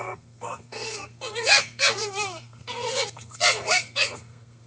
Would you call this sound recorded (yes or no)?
no